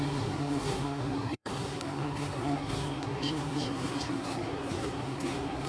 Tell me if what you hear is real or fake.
fake